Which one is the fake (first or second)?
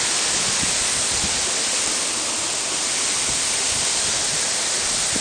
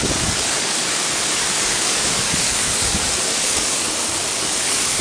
second